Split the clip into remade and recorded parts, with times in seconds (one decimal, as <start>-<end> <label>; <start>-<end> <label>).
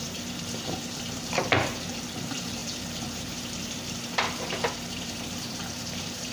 0.0-6.3 remade